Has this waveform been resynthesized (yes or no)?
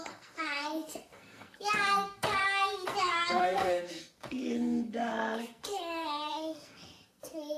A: yes